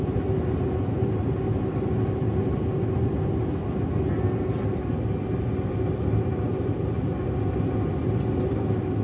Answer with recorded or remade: recorded